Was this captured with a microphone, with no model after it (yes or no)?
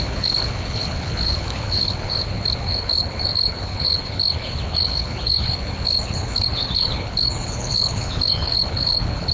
no